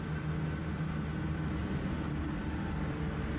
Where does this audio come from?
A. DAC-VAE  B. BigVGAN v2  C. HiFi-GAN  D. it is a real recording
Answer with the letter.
D